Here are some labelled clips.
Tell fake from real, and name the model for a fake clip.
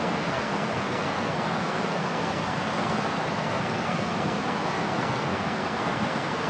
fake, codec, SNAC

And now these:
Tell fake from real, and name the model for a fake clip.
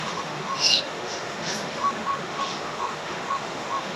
fake, autoencoder, DAC-VAE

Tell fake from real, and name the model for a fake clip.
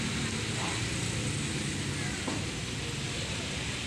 real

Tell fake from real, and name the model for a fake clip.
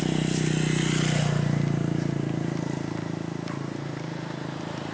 real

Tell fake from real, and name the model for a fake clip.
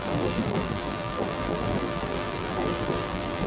fake, vocoder, BigVGAN v2